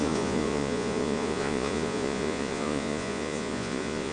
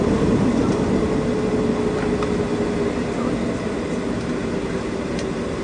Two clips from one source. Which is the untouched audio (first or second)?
second